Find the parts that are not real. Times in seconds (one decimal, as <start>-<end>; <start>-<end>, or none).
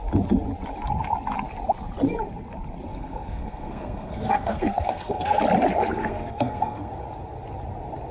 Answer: 2.9-5.4; 6.0-6.9